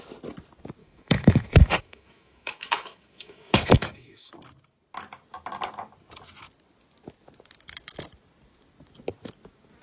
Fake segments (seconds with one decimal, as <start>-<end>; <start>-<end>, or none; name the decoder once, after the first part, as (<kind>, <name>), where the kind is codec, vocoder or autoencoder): 0.8-4.3 (autoencoder, DAC-VAE)